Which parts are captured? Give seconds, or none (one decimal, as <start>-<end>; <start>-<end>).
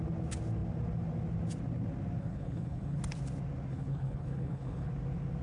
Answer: 0.0-2.2; 3.0-3.7; 4.9-5.4